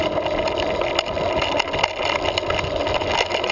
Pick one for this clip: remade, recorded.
recorded